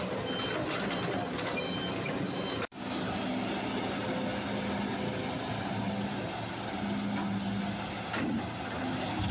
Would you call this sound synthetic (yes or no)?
no